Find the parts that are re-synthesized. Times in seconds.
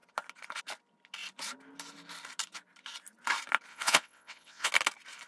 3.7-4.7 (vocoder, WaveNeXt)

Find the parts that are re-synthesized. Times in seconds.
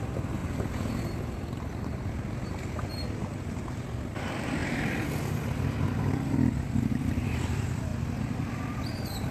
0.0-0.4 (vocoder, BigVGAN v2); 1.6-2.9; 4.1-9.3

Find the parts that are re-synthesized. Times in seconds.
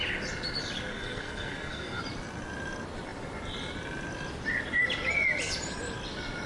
0.9-2.0 (codec, SNAC)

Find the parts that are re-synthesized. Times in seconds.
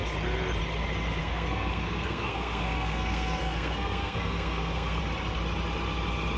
1.2-5.0 (codec, SNAC)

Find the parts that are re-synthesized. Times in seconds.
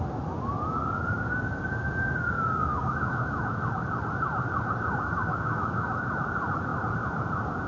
2.7-3.6 (autoencoder, DAC-VAE); 5.3-6.1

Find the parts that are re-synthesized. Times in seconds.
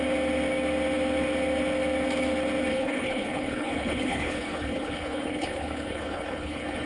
2.7-6.9 (codec, HILCodec)